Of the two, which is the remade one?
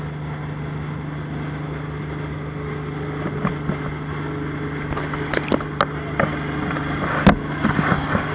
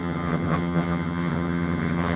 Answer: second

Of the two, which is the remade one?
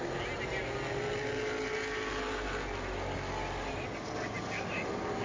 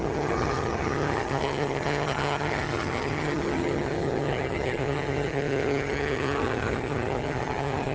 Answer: second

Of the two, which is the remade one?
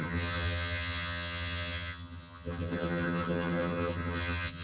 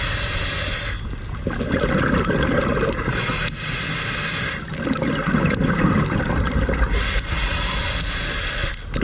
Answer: first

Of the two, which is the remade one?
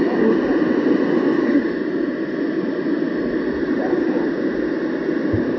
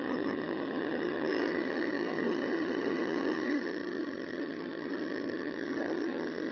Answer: second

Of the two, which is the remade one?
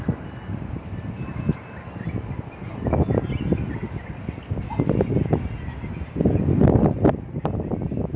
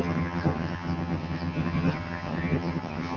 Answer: second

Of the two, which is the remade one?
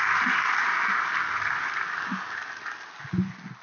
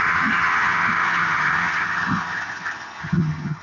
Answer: second